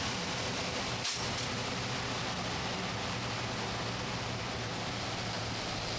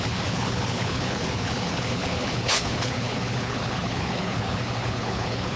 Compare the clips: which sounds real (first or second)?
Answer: first